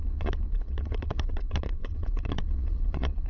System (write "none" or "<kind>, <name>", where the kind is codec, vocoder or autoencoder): vocoder, Vocos